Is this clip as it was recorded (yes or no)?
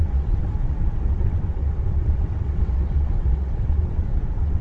no